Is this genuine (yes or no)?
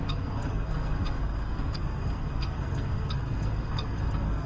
no